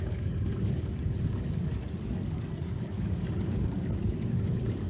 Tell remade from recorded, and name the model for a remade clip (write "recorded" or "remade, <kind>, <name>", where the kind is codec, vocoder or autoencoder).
remade, codec, DAC